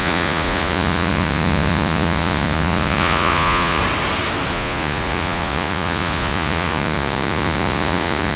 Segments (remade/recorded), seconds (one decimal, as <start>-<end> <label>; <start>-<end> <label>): 0.0-3.8 remade; 3.8-4.5 recorded; 4.5-8.4 remade